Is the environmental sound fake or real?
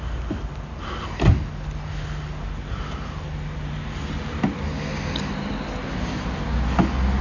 real